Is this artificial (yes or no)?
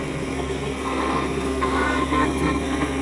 yes